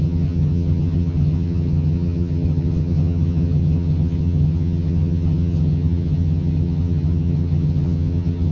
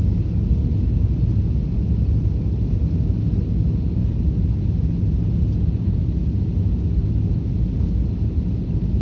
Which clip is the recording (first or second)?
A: second